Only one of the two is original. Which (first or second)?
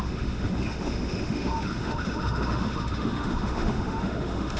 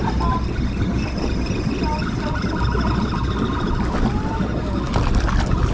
second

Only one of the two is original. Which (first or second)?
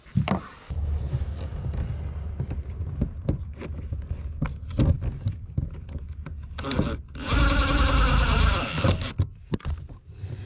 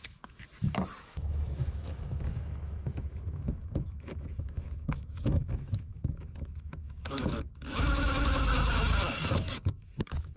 first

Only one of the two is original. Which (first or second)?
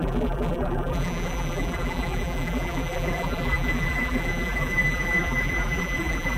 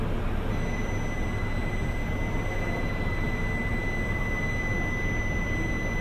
second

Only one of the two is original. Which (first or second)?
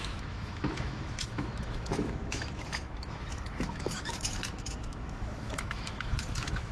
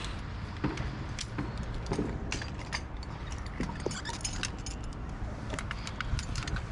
second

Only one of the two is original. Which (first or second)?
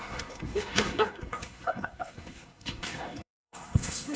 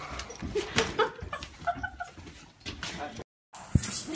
second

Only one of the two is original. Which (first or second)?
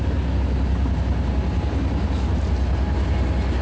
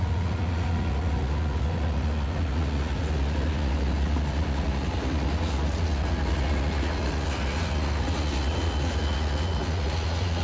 first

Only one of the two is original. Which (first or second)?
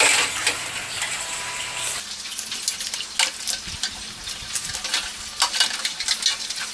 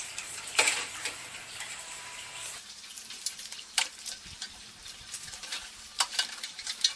first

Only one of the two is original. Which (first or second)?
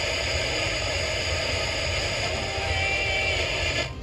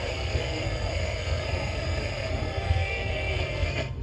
first